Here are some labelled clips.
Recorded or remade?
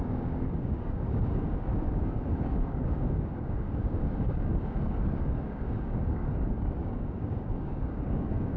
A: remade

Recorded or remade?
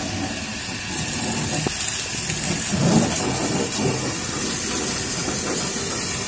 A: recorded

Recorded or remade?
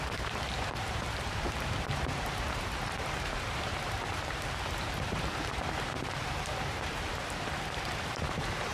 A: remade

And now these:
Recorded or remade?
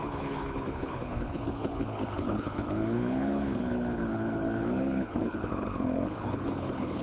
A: remade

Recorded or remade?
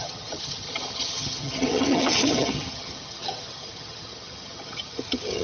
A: remade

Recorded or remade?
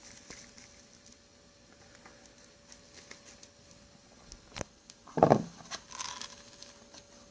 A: recorded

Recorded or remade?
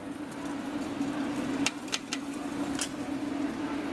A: recorded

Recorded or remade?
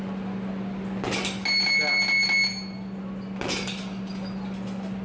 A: recorded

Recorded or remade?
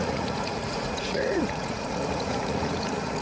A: remade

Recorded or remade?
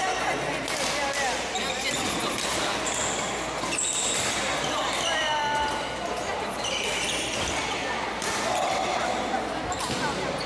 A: recorded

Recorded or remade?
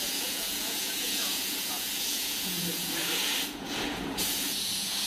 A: remade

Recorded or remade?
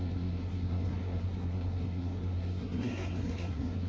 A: remade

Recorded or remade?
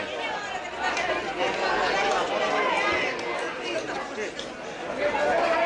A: recorded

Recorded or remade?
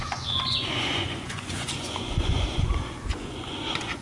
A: remade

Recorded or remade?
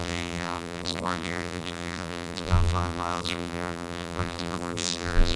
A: remade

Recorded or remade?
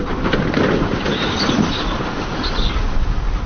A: recorded